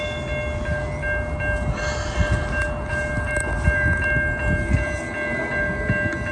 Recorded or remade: recorded